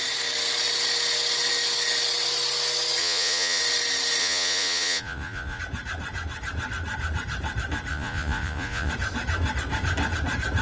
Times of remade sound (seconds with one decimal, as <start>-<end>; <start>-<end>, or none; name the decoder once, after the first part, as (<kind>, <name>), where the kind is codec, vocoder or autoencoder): 3.0-3.6 (vocoder, Vocos); 4.2-5.6; 7.9-8.9